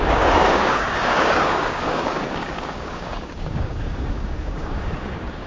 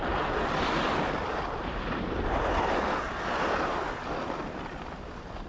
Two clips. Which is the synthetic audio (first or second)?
first